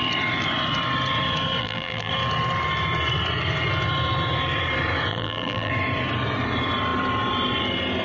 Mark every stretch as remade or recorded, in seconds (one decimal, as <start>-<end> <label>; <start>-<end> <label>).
0.0-1.6 recorded; 1.6-2.1 remade; 2.1-5.1 recorded; 5.1-5.7 remade; 5.7-8.0 recorded